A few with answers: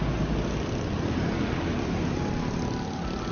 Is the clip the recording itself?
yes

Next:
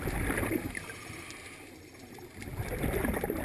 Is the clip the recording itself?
yes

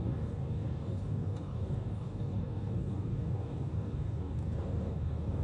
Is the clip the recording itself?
no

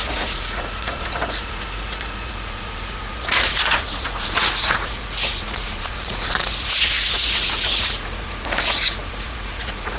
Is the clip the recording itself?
no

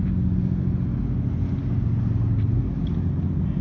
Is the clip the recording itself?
yes